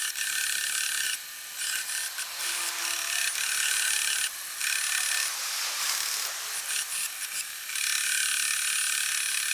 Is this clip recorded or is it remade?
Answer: recorded